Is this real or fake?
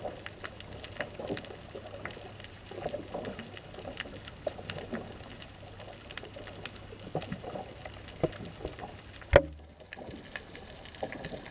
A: real